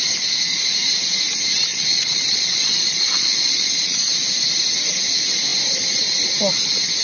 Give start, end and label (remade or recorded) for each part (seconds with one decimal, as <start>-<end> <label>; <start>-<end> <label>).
0.0-1.7 recorded; 1.7-4.1 remade; 4.1-7.0 recorded